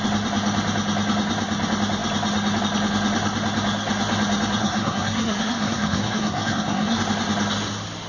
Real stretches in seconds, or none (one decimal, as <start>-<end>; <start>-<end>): 0.0-4.6; 7.0-8.1